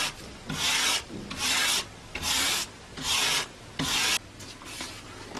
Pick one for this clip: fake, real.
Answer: real